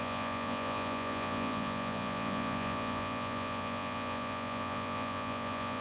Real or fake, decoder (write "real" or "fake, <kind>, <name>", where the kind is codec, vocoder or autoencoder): fake, vocoder, Vocos